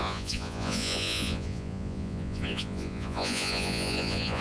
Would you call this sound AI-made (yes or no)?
yes